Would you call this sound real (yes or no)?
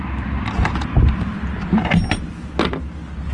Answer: yes